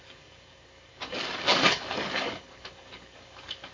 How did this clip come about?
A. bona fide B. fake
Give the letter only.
B